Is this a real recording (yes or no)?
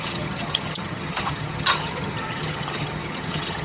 no